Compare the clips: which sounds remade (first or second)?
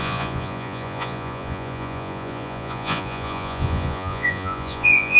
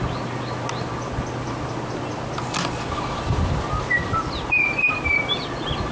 first